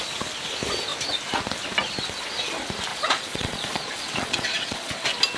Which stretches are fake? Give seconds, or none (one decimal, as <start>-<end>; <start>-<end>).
2.9-5.0